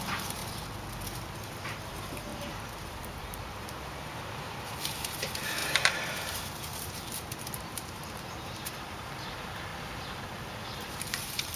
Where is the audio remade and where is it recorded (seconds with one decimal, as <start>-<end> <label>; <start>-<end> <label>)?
0.0-0.4 remade; 0.4-1.9 recorded; 1.9-9.7 remade; 9.7-10.5 recorded; 10.5-11.6 remade